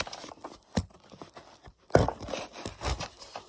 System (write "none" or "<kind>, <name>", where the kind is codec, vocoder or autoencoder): none